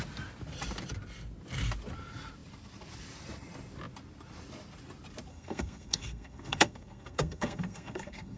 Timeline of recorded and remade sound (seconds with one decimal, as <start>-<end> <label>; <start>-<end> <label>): 0.0-5.3 recorded; 5.3-8.4 remade